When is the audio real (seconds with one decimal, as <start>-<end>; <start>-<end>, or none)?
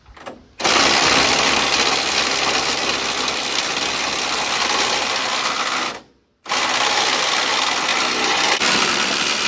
0.0-9.5